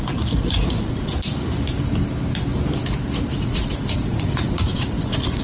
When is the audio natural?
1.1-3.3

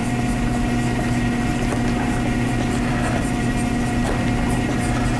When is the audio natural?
0.0-5.2

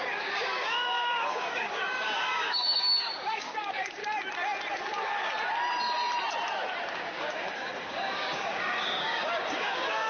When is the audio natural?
4.0-4.8; 5.3-6.9